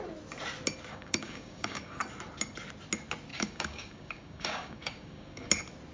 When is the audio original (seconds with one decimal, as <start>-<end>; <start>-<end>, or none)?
0.0-0.9; 2.0-3.3; 5.5-5.9